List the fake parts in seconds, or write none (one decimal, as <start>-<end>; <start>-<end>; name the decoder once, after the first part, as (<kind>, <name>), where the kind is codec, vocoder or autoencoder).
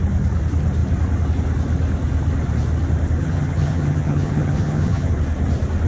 3.2-5.1 (vocoder, HiFi-GAN)